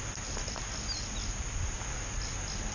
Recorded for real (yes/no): yes